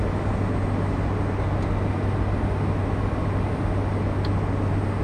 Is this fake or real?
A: real